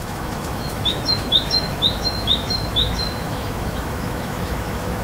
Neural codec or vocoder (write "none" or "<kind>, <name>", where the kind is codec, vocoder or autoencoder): autoencoder, DAC-VAE